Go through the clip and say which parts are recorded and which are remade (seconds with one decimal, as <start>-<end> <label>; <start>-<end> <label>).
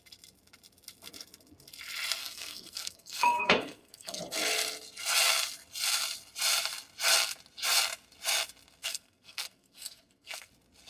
0.0-2.2 recorded; 2.2-4.2 remade; 4.2-8.8 recorded; 8.8-10.5 remade; 10.5-10.9 recorded